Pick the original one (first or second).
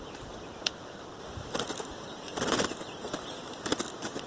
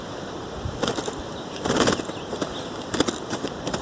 first